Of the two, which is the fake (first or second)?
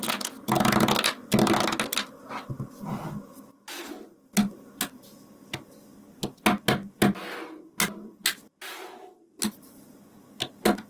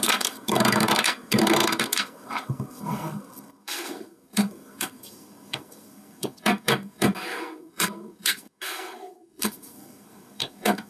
second